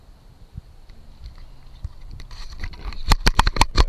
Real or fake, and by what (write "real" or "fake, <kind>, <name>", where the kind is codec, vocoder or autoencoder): real